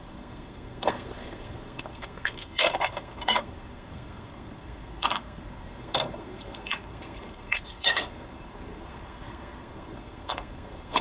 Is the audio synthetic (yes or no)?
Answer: yes